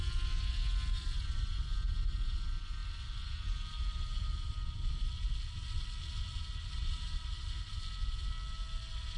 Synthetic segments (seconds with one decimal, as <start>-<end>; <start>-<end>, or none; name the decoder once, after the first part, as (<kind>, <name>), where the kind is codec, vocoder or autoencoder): none